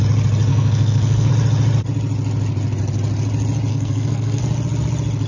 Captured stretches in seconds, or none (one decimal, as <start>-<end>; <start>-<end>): 0.0-0.5; 1.3-3.7; 4.4-5.3